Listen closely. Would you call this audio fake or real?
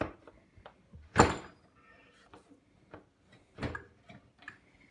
real